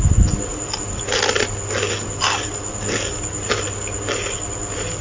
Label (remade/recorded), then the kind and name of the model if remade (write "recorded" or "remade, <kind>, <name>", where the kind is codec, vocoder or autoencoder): recorded